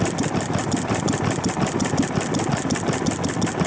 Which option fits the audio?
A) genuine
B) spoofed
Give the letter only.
A